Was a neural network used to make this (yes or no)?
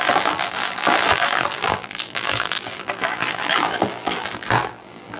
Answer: yes